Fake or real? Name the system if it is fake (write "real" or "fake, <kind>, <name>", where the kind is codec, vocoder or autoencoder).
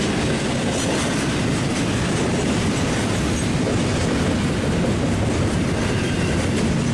real